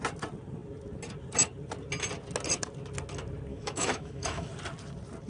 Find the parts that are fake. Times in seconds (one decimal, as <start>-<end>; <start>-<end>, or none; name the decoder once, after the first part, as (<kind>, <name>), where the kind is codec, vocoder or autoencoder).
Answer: 3.5-4.5 (autoencoder, DAC-VAE)